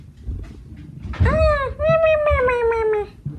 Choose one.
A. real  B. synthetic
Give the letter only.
A